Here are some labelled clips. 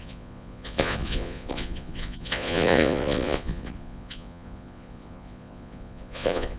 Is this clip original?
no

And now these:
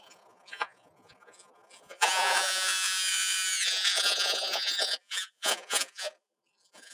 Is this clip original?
no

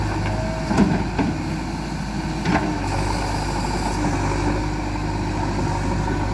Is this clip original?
yes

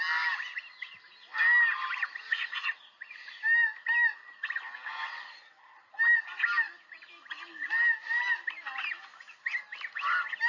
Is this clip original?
yes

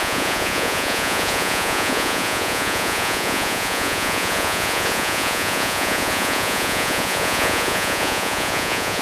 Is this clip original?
no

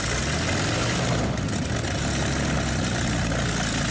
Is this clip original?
yes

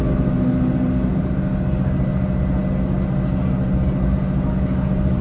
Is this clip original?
yes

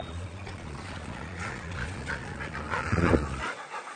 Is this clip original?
no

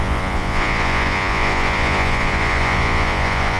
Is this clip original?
no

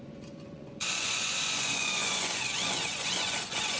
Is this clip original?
no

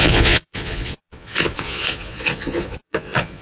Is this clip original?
no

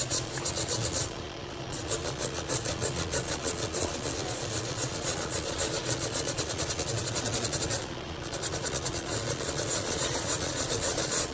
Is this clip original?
no